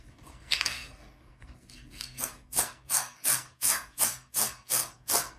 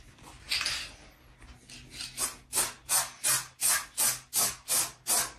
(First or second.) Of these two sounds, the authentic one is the second